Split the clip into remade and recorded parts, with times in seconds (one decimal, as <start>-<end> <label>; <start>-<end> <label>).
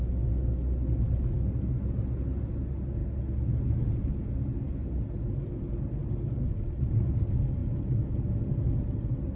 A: 0.0-9.3 recorded